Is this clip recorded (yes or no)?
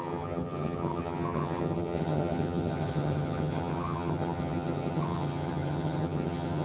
no